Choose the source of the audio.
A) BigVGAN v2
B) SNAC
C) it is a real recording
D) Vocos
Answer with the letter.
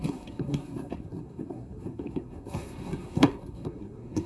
B